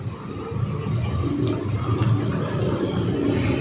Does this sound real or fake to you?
real